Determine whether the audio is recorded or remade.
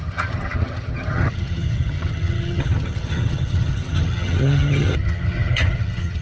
remade